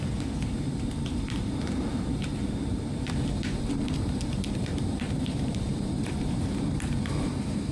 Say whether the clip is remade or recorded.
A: remade